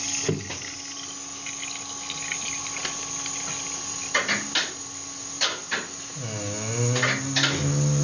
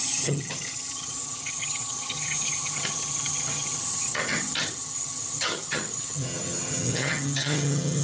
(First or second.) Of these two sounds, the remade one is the second